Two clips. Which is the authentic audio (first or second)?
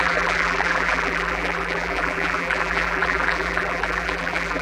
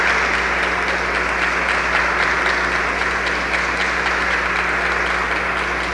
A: second